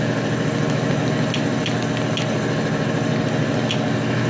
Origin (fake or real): real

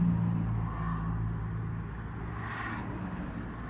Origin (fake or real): real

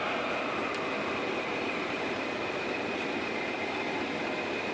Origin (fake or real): real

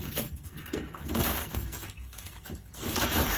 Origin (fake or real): fake